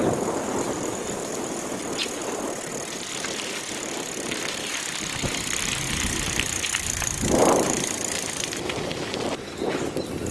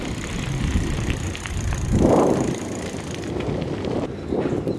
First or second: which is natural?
first